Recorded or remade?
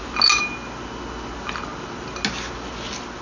recorded